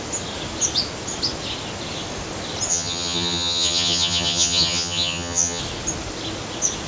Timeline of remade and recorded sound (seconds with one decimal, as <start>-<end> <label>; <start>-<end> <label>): 0.0-2.7 recorded; 2.7-5.6 remade; 5.6-6.9 recorded